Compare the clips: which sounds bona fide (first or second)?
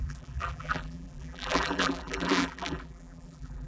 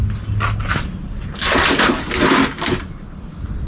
second